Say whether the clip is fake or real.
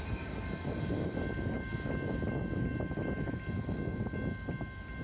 real